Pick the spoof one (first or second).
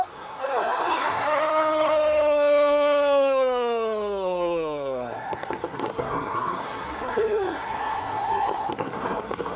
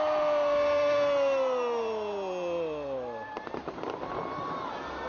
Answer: first